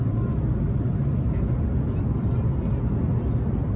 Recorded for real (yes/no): yes